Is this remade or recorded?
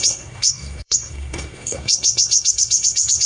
remade